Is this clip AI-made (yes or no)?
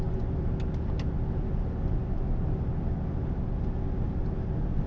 no